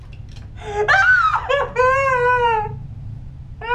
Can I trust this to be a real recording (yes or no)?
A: yes